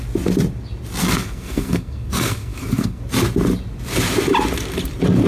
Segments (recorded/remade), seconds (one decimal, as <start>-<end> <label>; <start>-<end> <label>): 0.0-1.0 recorded; 1.0-3.0 remade; 3.0-5.3 recorded